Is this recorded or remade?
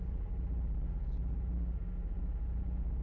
recorded